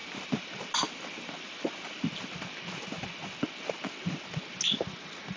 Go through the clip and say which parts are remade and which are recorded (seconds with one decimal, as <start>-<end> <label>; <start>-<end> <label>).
0.0-5.4 recorded